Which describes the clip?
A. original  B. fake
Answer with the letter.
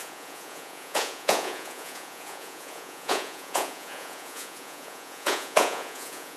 B